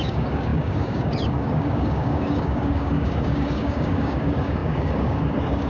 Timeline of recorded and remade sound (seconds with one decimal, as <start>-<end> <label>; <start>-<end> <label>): 0.0-5.7 remade